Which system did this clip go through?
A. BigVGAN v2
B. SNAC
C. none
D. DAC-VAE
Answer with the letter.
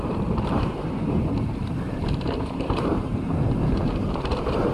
A